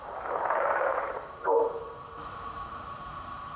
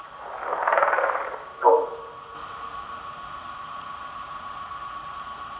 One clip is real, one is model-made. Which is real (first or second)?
second